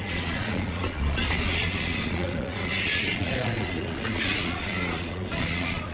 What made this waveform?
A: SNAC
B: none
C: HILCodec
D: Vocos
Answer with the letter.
D